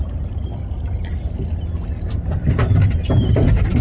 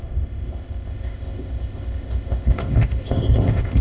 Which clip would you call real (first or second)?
first